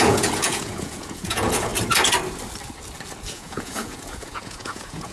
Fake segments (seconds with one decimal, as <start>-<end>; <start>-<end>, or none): 0.0-1.7; 3.3-5.1